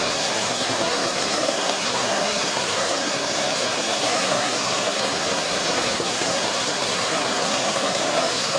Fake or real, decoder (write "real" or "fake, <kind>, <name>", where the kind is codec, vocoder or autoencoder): fake, codec, SNAC